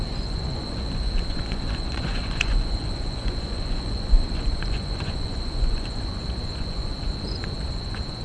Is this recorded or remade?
remade